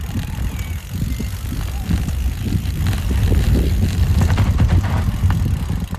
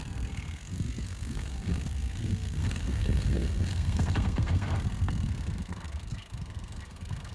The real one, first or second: first